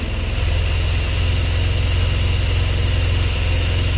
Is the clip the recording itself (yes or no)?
yes